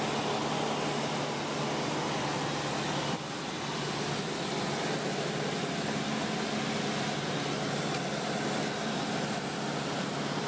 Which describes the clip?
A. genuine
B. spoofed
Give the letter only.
A